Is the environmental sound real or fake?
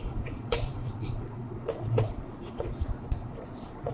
fake